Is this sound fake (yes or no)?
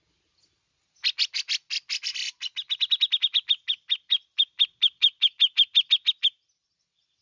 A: no